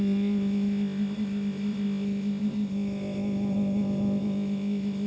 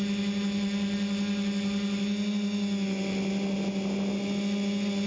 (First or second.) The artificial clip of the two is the first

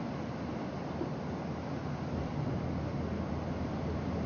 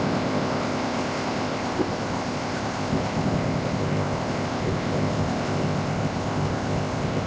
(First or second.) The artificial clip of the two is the second